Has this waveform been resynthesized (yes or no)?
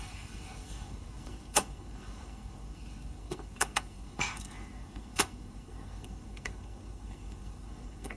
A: yes